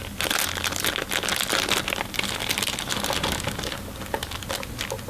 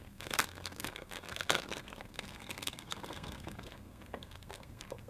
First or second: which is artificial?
second